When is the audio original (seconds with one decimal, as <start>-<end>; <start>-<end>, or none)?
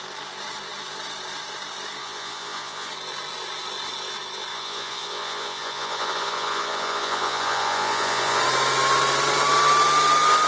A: 0.0-2.0; 2.9-4.5; 8.4-10.5